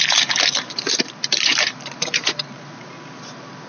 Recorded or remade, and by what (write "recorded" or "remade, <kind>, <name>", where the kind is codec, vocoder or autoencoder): remade, vocoder, BigVGAN v2